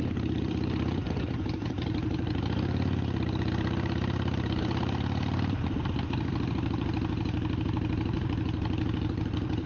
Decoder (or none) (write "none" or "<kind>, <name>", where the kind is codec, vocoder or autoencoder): vocoder, BigVGAN v2